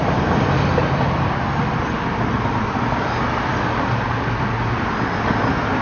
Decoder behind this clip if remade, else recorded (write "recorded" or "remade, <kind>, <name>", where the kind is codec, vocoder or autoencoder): recorded